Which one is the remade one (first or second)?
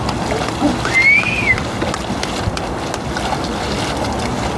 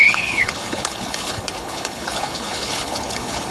second